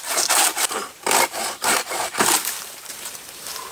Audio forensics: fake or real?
fake